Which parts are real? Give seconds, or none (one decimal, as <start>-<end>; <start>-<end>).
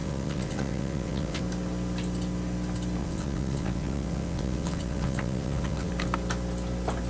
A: 1.4-3.0; 5.9-7.1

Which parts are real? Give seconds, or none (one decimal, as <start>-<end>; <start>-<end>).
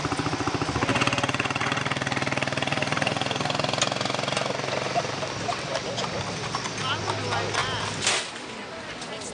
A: 0.0-0.9; 1.8-9.3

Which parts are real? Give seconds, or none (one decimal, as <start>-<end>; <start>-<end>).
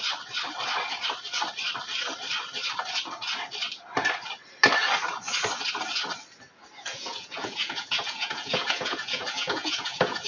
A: 0.0-6.9